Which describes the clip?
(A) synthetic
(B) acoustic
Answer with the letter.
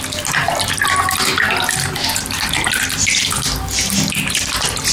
B